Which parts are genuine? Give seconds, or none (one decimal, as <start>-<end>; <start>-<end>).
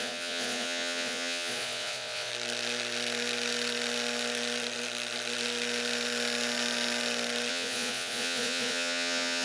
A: 2.3-7.5